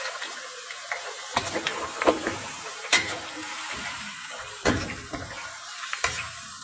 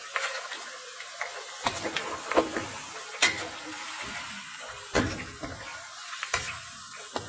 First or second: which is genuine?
second